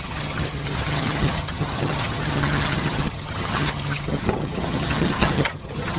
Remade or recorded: remade